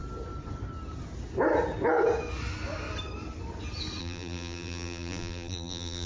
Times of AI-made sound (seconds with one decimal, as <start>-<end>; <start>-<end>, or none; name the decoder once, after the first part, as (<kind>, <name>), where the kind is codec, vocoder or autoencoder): 4.0-6.1 (vocoder, BigVGAN v2)